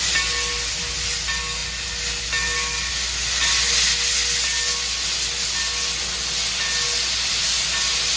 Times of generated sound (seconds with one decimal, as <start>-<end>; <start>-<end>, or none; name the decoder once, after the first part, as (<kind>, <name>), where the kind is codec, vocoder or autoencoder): none

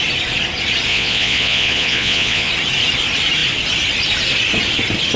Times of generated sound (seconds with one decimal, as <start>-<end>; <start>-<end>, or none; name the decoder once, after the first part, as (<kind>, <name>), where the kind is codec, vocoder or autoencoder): 0.9-2.5 (vocoder, Vocos)

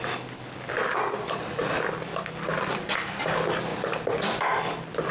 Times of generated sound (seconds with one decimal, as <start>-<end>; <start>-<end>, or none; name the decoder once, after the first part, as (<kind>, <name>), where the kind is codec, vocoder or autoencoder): none

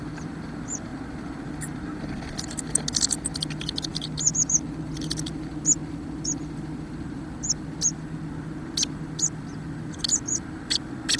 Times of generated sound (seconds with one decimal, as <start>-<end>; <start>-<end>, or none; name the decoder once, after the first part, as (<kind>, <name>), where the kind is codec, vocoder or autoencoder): none

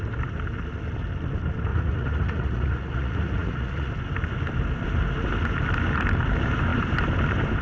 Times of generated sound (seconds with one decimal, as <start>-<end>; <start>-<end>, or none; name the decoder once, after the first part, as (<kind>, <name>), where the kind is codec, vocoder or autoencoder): 1.7-3.9 (vocoder, Vocos)